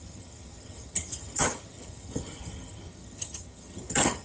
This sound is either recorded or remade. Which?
remade